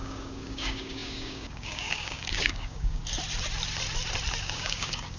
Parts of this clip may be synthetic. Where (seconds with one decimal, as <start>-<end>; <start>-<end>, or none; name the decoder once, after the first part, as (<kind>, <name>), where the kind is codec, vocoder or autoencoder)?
0.0-3.0 (codec, DAC); 4.4-5.2